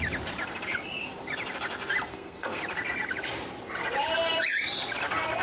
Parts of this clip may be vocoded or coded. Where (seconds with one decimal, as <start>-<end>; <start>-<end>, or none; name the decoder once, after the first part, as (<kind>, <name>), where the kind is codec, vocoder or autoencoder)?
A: 2.1-2.6 (codec, SNAC)